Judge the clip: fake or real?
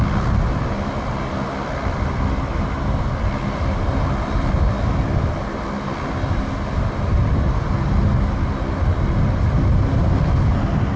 real